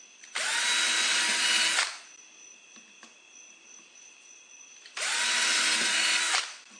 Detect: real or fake real